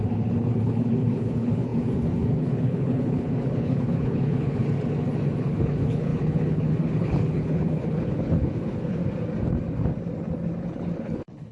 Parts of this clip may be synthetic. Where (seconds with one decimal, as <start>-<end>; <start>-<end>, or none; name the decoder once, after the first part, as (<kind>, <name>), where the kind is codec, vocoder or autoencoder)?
0.0-4.6 (codec, HILCodec); 5.4-9.0; 11.0-11.5